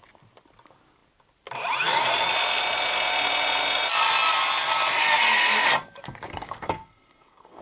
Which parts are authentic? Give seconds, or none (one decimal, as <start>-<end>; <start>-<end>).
0.0-6.3